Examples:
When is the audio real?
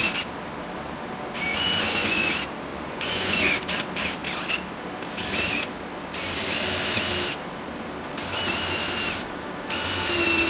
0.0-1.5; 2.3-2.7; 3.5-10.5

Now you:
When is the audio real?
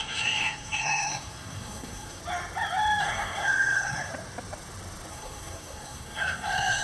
2.2-3.0; 4.1-5.1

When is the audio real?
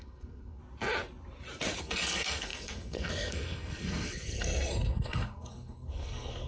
0.6-1.8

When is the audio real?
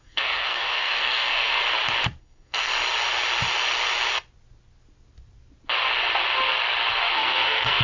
1.6-2.2; 2.7-7.1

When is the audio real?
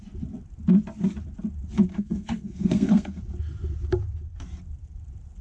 0.0-1.9; 3.2-5.4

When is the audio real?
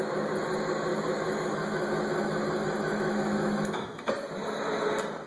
0.0-0.9; 4.1-5.3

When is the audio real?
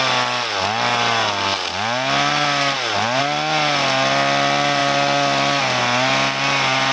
0.0-6.9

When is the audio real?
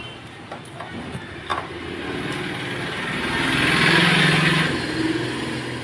0.0-5.8